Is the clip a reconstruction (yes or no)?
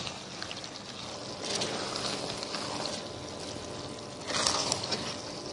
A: no